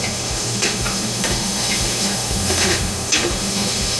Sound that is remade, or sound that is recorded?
remade